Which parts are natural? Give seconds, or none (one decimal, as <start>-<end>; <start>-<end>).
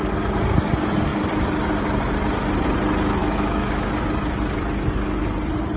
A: 0.0-3.2; 3.9-5.8